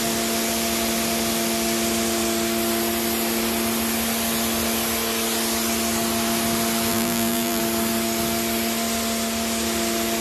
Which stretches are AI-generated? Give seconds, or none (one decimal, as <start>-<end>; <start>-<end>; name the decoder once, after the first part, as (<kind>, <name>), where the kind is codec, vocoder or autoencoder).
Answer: 6.9-7.6 (vocoder, BigVGAN v2)